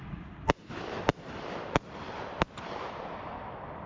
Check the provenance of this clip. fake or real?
real